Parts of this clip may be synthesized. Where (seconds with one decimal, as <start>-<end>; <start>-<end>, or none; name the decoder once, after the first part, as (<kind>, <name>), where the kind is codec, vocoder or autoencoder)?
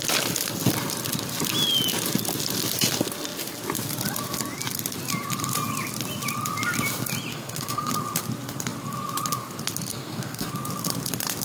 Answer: 7.3-7.9 (codec, SNAC); 9.9-10.5